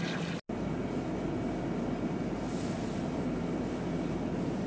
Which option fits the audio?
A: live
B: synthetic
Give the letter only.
A